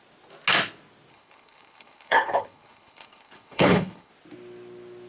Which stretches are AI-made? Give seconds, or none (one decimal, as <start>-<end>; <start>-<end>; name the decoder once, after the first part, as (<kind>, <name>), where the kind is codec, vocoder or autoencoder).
1.1-4.1 (codec, HILCodec)